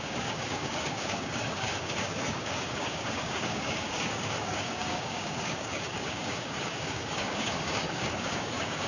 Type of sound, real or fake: fake